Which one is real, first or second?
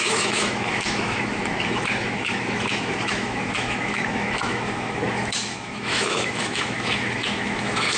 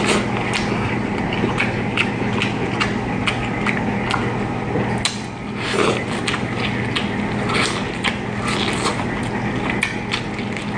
second